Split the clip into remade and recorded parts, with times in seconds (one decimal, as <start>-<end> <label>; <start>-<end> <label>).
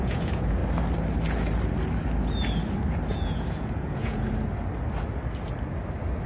0.0-0.6 remade; 0.6-3.1 recorded; 3.1-4.3 remade; 4.3-6.3 recorded